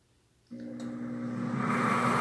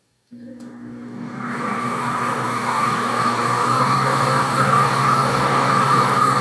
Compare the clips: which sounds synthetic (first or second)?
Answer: second